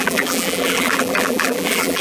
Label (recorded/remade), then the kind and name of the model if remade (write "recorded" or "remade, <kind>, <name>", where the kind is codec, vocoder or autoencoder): remade, vocoder, BigVGAN v2